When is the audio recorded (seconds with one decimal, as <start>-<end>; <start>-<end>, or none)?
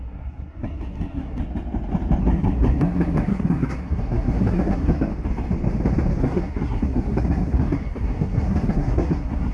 1.4-2.2; 5.1-6.2